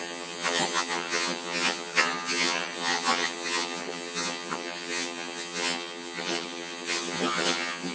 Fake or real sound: fake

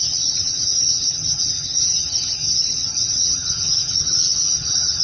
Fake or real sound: fake